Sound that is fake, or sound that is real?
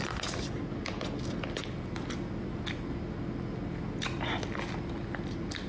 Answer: real